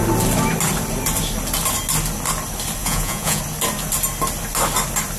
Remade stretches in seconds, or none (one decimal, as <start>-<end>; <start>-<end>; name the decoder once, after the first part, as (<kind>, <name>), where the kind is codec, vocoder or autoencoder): 2.8-3.4 (vocoder, Vocos)